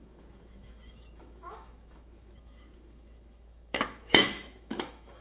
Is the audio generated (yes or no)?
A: yes